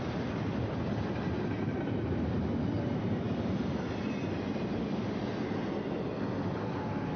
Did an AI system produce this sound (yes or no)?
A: no